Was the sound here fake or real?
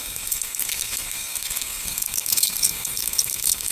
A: fake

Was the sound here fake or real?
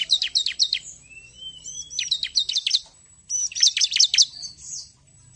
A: fake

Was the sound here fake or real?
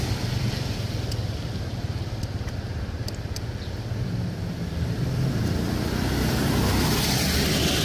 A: fake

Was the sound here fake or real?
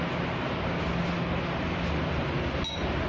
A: real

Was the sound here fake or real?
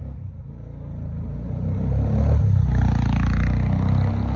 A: real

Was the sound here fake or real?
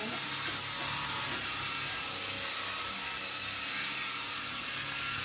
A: real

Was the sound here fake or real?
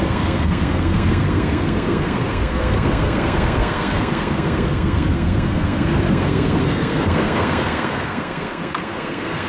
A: fake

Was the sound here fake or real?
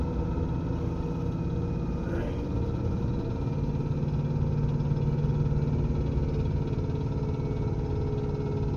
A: real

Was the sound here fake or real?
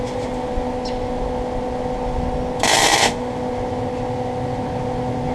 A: real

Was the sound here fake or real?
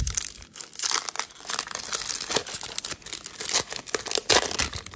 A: real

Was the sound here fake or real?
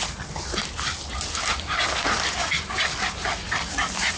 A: real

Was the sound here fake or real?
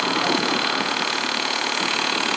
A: fake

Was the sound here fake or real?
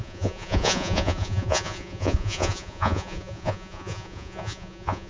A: fake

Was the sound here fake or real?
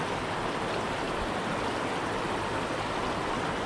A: real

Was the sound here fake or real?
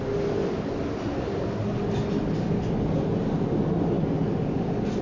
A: real